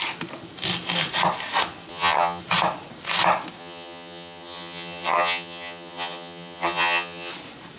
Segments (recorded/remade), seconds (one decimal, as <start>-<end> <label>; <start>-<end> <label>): 0.0-1.9 recorded; 1.9-2.4 remade; 2.4-3.6 recorded; 3.6-7.3 remade; 7.3-7.8 recorded